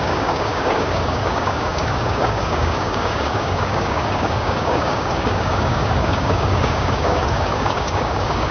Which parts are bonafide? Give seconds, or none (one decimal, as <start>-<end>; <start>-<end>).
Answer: none